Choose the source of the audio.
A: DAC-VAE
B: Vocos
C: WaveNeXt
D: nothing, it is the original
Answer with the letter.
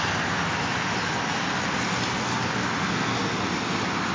D